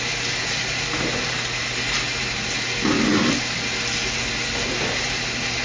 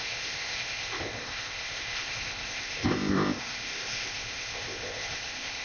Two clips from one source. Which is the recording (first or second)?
first